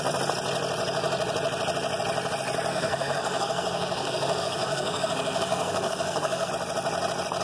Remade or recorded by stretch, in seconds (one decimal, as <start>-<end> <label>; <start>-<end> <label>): 0.0-2.7 recorded; 2.7-6.5 remade; 6.5-7.4 recorded